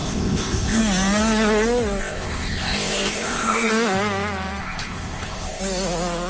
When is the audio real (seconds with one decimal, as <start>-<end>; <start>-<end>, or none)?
0.8-2.0; 3.7-4.6; 5.6-6.3